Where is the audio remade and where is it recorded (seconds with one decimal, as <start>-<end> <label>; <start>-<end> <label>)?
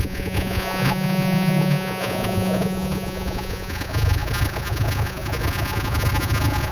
0.0-6.7 remade